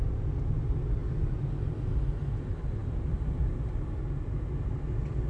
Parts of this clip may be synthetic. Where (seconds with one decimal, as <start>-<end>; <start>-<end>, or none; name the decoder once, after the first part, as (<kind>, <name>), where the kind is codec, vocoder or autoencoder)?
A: none